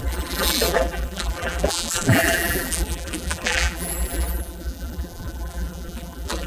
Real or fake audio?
fake